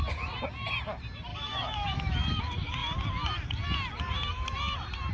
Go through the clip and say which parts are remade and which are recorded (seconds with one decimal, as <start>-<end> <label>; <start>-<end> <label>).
0.0-1.3 recorded; 1.3-2.4 remade; 2.4-5.1 recorded